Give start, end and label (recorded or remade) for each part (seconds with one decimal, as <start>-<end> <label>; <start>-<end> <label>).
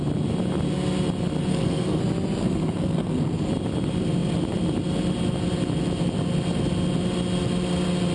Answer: 0.0-1.5 recorded; 1.5-2.0 remade; 2.0-2.4 recorded; 2.4-3.5 remade; 3.5-8.1 recorded